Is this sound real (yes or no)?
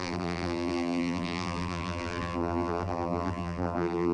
no